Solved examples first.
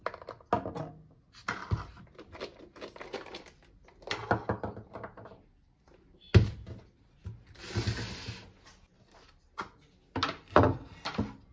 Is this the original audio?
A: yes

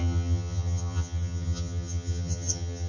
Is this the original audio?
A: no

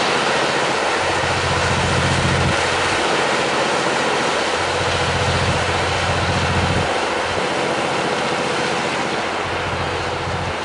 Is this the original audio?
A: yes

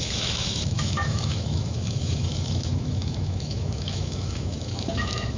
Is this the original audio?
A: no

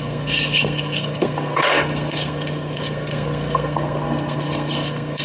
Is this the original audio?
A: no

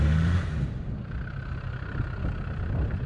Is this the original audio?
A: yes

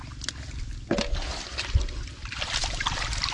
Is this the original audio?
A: yes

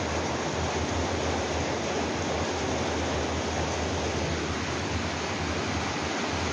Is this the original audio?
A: yes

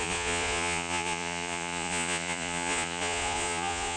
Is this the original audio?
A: no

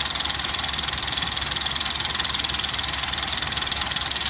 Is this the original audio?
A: yes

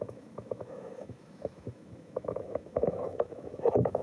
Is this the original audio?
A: no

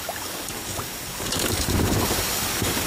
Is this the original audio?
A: no